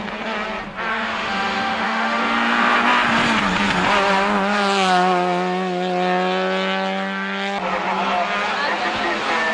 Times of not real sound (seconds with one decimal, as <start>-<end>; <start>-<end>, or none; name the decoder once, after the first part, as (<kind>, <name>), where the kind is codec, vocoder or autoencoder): 0.9-2.2 (autoencoder, DAC-VAE)